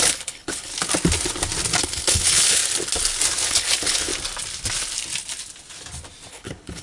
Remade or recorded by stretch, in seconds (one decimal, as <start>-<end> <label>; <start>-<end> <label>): 0.0-0.7 remade; 0.7-1.8 recorded; 1.8-2.6 remade; 2.6-3.5 recorded; 3.5-4.1 remade; 4.1-6.3 recorded; 6.3-6.8 remade